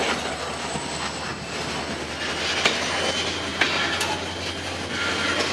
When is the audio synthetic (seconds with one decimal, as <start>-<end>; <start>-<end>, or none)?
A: none